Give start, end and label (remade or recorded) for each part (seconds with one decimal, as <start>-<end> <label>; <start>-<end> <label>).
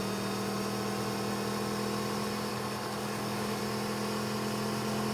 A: 0.0-2.5 recorded; 2.5-3.6 remade; 3.6-5.1 recorded